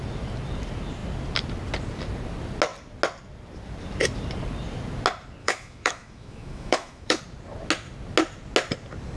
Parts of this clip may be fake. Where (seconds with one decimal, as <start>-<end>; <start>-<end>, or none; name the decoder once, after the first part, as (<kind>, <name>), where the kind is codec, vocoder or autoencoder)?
5.4-7.2 (autoencoder, DAC-VAE)